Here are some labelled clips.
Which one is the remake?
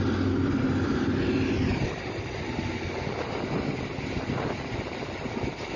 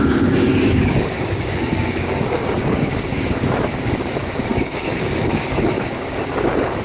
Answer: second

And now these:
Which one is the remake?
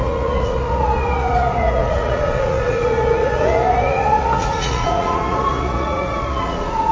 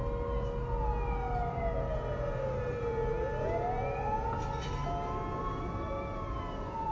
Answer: first